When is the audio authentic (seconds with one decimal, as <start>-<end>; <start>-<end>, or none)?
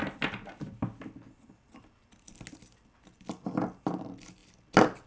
0.0-5.1